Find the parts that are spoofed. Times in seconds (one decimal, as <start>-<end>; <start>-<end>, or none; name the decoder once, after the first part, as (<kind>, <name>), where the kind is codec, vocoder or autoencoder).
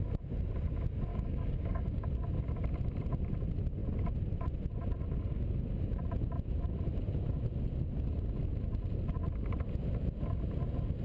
1.1-2.1 (codec, DAC)